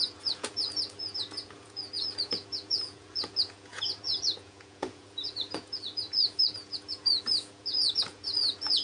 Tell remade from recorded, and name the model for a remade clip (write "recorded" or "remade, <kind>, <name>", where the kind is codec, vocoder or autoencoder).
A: remade, vocoder, Vocos